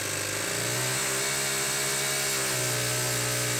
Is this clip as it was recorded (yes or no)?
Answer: yes